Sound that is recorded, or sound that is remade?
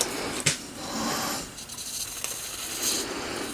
recorded